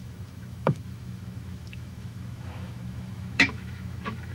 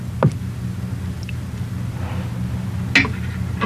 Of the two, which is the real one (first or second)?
second